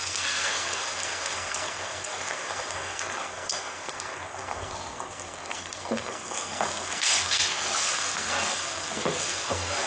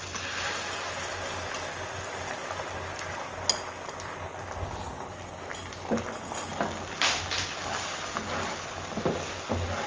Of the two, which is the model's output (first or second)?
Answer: first